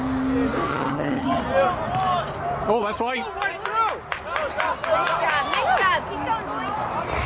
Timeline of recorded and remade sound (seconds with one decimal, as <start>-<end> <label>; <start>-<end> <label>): 0.0-0.7 recorded; 0.7-1.4 remade; 1.4-7.3 recorded